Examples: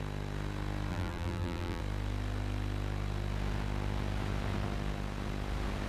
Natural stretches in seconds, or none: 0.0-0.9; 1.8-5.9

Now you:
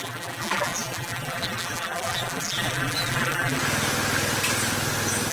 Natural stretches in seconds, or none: 3.6-5.3